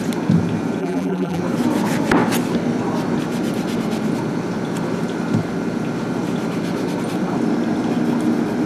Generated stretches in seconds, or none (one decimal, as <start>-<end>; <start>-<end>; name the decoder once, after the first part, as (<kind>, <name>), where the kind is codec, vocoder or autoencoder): 0.8-1.4 (vocoder, BigVGAN v2)